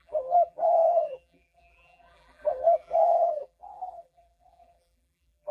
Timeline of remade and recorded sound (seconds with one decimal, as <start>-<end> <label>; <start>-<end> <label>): 0.0-5.5 remade